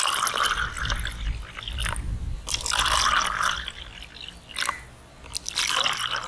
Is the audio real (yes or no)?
yes